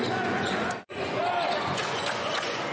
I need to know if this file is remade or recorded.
remade